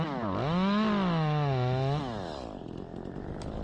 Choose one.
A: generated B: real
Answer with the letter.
B